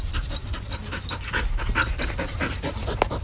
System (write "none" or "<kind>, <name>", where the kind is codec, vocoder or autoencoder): none